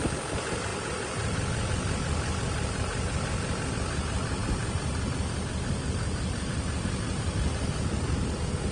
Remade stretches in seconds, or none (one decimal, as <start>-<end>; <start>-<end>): none